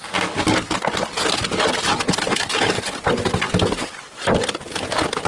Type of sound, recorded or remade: recorded